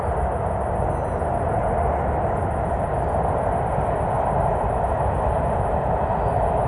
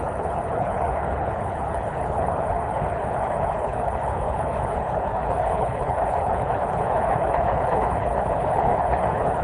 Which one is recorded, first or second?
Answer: first